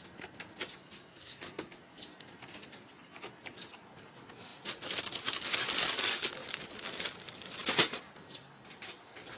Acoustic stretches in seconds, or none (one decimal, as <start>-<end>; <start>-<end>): 0.0-0.8; 1.8-9.4